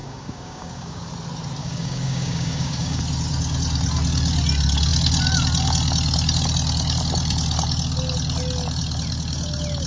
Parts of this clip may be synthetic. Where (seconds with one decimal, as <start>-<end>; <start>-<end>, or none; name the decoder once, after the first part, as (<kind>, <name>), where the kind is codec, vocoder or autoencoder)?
0.0-1.1 (codec, DAC); 1.6-3.0